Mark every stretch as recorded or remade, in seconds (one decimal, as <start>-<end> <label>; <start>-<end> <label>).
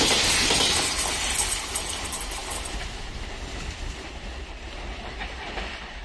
0.0-6.0 recorded